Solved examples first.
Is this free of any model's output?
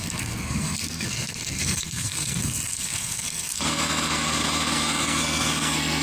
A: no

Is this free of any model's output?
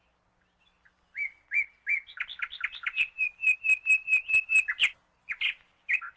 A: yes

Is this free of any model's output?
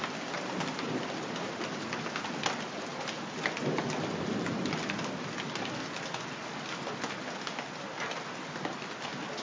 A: yes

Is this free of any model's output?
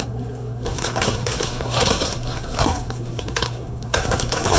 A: no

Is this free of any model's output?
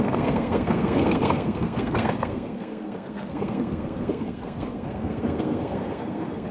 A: no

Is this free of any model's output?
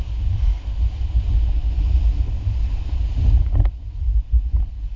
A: yes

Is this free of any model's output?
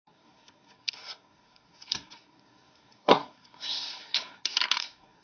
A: no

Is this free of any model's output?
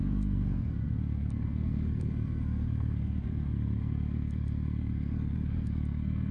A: no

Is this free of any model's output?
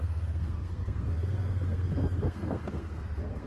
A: no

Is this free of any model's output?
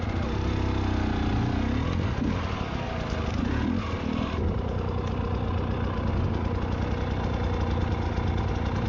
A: yes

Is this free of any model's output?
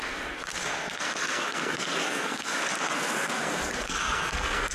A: no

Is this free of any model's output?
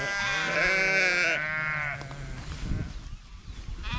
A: yes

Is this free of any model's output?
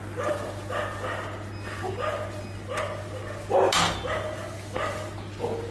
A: yes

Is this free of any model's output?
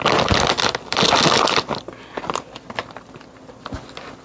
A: yes